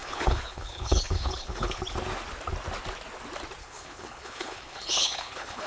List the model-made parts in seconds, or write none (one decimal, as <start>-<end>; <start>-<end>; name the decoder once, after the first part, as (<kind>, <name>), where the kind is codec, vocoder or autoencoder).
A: 0.0-1.8 (codec, HILCodec); 3.6-5.7